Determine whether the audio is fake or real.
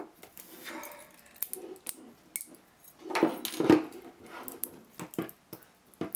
real